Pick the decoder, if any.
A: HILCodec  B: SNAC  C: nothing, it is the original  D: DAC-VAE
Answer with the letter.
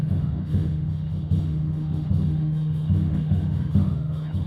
D